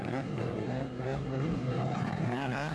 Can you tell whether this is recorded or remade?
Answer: remade